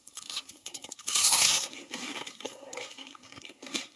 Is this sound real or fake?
fake